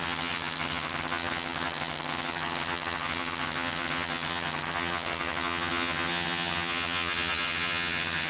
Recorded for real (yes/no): no